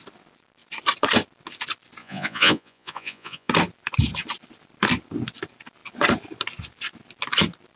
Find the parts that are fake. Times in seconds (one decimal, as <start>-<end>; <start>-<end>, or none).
2.0-3.5